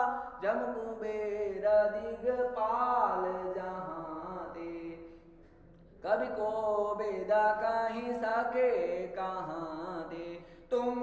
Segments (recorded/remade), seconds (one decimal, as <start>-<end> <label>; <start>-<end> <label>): 0.0-11.0 recorded